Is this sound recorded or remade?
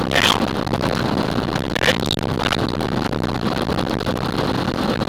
recorded